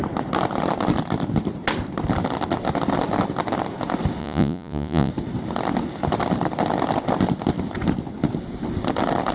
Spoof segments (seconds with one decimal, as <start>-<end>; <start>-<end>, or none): 4.2-5.1